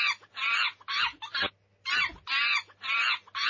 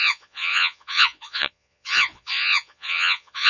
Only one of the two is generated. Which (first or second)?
second